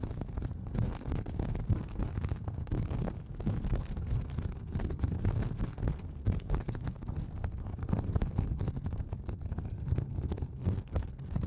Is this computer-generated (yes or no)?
yes